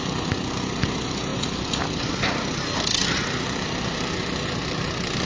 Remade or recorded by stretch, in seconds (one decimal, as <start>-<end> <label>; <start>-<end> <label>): 0.0-5.3 recorded